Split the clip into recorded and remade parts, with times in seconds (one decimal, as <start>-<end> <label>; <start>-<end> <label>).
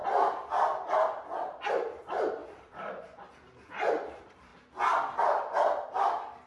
0.0-1.7 recorded; 1.7-4.5 remade; 4.5-6.5 recorded